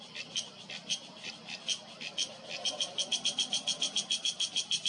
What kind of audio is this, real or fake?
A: fake